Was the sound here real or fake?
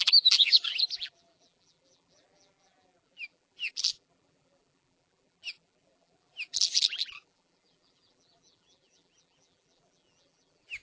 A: fake